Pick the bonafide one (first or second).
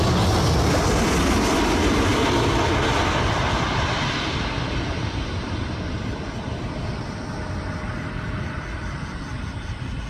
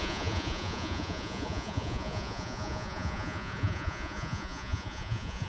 first